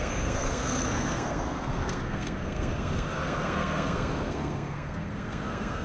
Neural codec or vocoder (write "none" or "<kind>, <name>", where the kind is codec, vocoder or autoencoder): codec, SNAC